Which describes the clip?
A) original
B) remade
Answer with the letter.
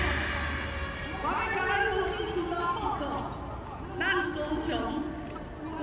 A